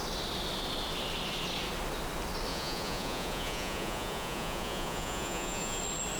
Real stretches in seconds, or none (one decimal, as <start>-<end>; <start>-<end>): 0.0-2.5; 5.8-6.2